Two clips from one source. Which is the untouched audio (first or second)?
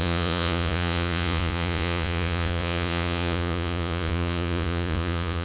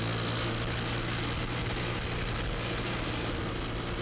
second